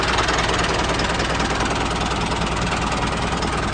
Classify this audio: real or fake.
real